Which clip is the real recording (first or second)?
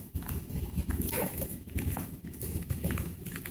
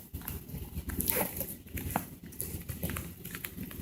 second